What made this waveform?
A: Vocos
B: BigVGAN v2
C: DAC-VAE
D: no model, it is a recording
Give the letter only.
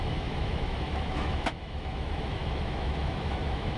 C